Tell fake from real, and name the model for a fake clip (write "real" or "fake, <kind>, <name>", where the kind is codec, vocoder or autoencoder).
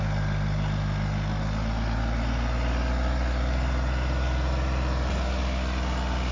real